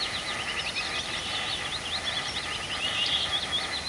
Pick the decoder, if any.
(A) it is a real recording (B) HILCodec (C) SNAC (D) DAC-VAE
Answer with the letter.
A